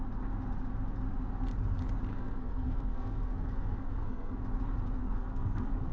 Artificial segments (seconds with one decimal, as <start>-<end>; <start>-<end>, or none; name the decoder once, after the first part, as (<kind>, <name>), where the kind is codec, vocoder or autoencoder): 2.1-4.4 (codec, SNAC); 5.0-5.9